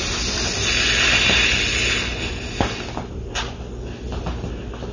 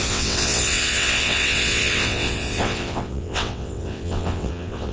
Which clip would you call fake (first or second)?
second